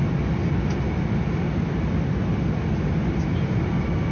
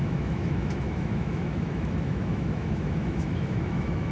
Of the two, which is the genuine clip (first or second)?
first